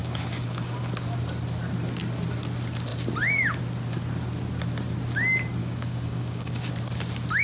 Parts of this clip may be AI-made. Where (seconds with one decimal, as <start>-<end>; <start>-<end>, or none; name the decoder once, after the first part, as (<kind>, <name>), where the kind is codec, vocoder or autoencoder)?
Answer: 0.0-0.8 (codec, DAC); 5.6-6.7